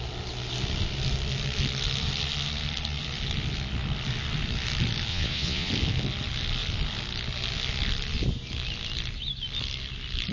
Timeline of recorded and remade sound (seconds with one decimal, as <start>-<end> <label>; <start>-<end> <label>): 0.0-5.1 recorded; 5.1-5.7 remade; 5.7-10.3 recorded